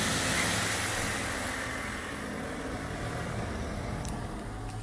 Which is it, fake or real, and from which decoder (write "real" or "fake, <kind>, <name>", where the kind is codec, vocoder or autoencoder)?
real